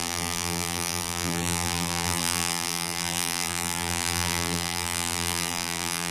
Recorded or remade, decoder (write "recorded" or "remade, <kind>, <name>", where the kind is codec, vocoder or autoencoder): remade, vocoder, BigVGAN v2